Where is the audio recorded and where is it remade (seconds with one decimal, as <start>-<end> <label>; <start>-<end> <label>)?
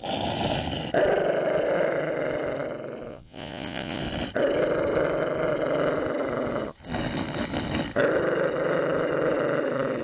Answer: 0.0-3.1 recorded; 3.1-4.0 remade; 4.0-10.0 recorded